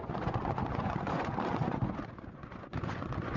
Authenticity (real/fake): fake